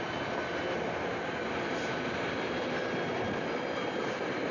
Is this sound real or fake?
real